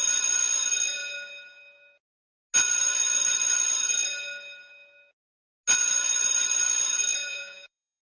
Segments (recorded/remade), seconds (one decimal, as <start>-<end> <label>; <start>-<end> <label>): 0.0-7.3 recorded; 7.3-8.0 remade